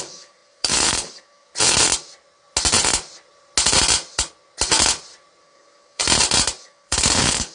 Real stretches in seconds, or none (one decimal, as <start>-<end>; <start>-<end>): 1.5-5.4; 6.0-6.6